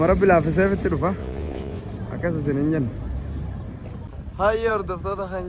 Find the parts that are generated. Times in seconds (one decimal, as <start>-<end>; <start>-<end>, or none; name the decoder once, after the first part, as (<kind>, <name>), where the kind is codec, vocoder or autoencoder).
1.2-1.8 (vocoder, Vocos)